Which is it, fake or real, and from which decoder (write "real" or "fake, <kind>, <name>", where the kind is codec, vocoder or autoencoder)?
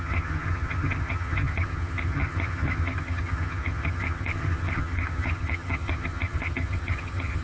fake, vocoder, HiFi-GAN